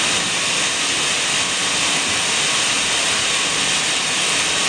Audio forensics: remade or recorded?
recorded